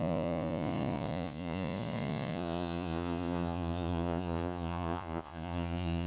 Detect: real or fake fake